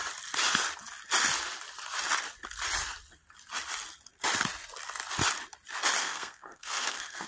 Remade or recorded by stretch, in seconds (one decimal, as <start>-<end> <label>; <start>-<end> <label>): 0.0-6.0 recorded; 6.0-7.3 remade